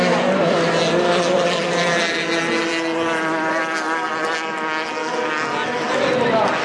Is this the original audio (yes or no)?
yes